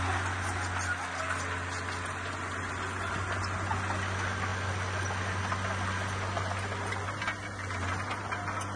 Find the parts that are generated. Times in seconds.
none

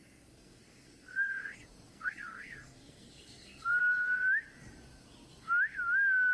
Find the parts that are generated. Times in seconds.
0.0-1.3 (codec, SNAC); 1.9-3.8

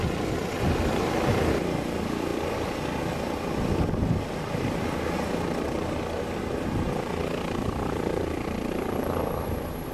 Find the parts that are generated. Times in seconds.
0.0-0.9 (vocoder, BigVGAN v2); 1.5-9.9